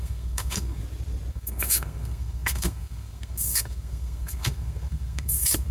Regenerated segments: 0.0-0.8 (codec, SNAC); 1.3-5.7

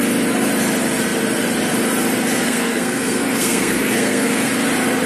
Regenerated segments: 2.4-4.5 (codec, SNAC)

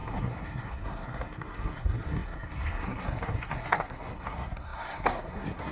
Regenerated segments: 0.0-5.7 (codec, SNAC)

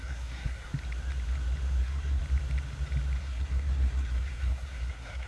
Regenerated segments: 0.0-0.7 (codec, SNAC); 1.8-2.2; 3.2-5.3